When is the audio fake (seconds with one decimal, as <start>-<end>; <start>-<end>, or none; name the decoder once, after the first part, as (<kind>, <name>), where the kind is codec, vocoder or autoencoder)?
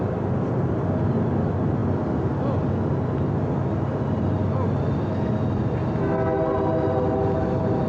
none